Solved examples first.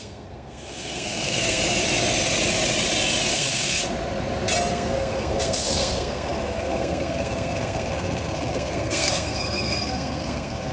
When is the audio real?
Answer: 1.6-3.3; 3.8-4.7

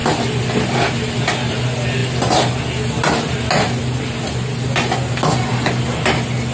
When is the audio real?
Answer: 0.0-6.5